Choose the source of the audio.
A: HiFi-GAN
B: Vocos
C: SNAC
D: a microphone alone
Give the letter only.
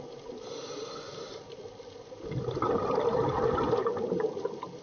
D